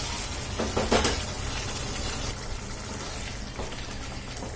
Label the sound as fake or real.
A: real